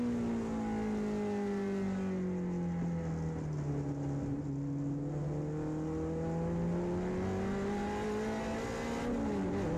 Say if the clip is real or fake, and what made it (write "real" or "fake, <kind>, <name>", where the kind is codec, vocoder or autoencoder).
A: real